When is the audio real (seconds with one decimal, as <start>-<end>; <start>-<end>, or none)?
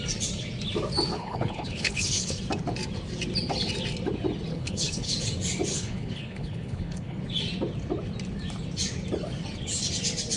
0.0-1.1; 2.4-4.5; 5.1-5.7; 7.2-10.4